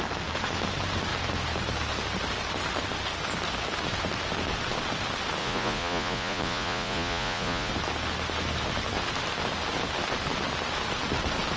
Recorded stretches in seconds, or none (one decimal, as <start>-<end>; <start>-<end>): 0.0-5.4; 7.7-11.6